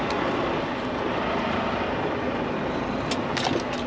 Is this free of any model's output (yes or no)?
yes